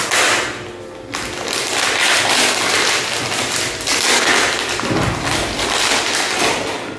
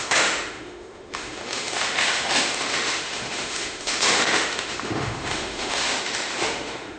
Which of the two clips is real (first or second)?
first